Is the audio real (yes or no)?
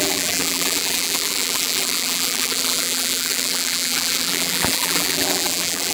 no